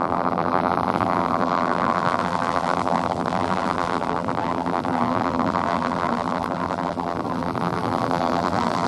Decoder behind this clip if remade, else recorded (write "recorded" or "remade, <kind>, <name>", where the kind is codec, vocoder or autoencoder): remade, vocoder, BigVGAN v2